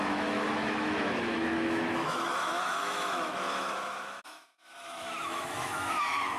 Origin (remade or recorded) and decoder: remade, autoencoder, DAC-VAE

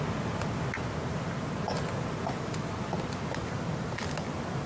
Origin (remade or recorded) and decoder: recorded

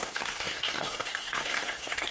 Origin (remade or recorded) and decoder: remade, codec, SNAC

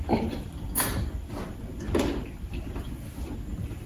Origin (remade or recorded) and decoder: recorded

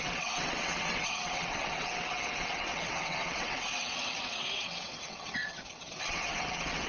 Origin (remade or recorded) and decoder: remade, vocoder, WaveNeXt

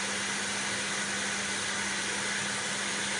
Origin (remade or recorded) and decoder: recorded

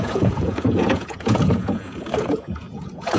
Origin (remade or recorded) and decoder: remade, vocoder, Vocos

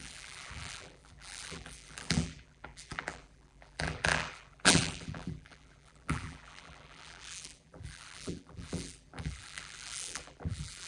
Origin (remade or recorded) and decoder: remade, vocoder, BigVGAN v2